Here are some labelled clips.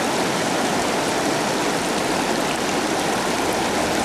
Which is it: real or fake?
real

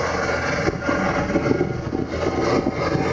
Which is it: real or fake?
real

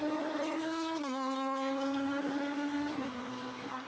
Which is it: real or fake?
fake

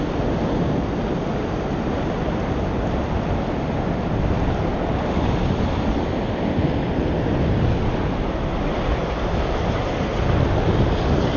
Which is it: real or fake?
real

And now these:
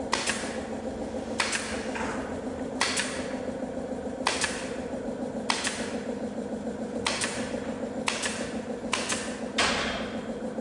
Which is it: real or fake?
real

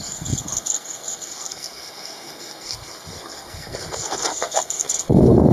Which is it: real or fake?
fake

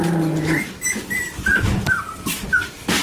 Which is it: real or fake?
real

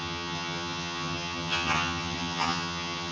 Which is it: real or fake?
fake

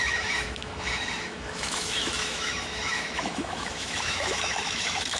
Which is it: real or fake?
fake